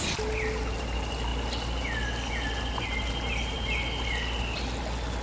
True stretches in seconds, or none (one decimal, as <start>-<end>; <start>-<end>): 0.0-5.2